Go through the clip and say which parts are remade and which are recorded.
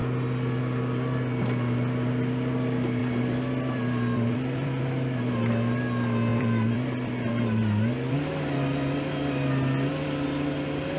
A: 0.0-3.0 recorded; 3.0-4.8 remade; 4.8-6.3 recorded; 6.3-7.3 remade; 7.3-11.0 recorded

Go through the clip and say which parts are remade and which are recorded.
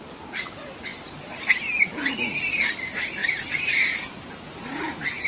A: 0.0-5.3 recorded